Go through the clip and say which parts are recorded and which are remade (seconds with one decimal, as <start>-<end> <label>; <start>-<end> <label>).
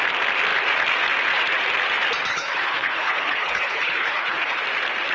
0.0-2.3 recorded; 2.3-4.6 remade; 4.6-5.1 recorded